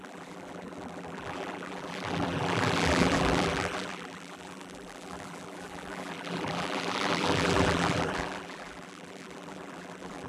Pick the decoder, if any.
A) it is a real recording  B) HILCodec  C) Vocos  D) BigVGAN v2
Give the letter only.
D